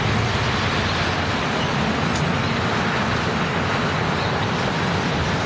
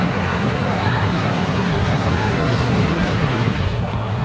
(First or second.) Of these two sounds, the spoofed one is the second